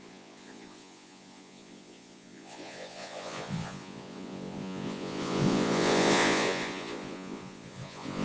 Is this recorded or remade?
remade